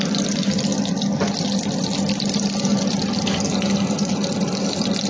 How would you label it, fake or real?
real